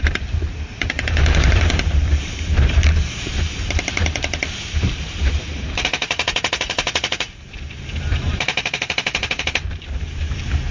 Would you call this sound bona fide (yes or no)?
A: no